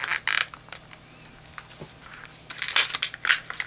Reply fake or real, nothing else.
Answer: real